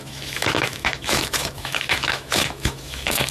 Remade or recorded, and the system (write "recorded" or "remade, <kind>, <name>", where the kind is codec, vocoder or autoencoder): remade, autoencoder, DAC-VAE